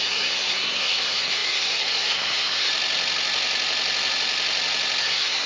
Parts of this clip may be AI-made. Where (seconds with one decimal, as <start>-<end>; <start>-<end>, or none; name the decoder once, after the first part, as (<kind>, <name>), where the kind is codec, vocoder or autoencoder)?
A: 0.0-2.7 (codec, SNAC); 5.0-5.5